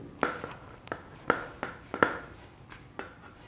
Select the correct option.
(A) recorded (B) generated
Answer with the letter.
A